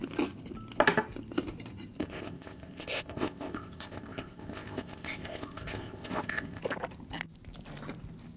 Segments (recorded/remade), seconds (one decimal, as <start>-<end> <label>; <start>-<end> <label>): 0.0-2.0 recorded; 2.0-6.6 remade; 6.6-8.4 recorded